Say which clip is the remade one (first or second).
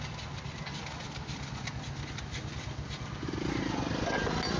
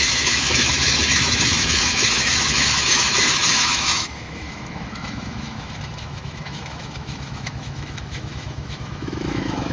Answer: second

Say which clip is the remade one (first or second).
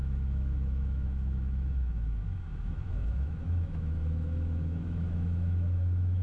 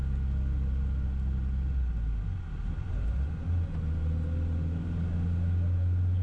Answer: first